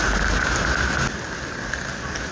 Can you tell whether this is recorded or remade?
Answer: recorded